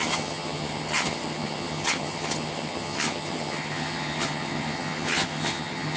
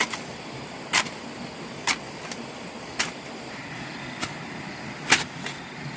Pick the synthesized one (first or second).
first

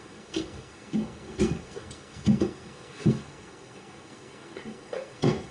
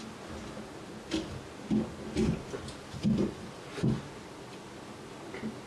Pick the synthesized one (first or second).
first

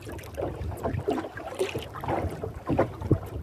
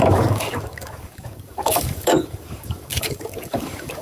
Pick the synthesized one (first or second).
second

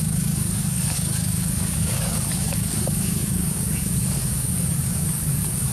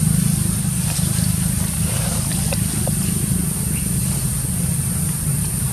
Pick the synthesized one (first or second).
first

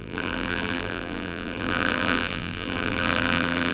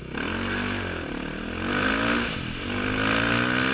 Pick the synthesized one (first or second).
first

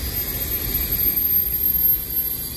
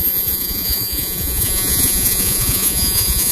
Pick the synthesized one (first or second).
second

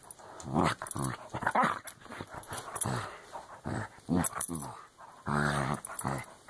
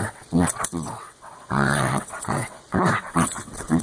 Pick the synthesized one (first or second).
second